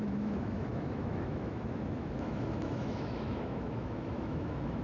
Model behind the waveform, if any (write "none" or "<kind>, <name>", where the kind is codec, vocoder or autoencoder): autoencoder, DAC-VAE